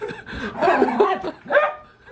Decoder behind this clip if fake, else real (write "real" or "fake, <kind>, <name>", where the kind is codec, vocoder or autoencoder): real